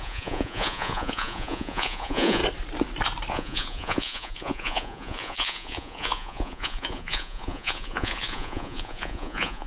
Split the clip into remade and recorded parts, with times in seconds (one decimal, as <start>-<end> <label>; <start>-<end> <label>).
0.0-2.4 remade; 2.4-3.3 recorded; 3.3-9.7 remade